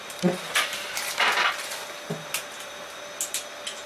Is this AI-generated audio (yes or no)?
no